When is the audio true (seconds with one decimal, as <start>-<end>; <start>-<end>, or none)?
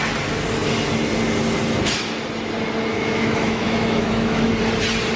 0.0-2.9; 4.5-5.2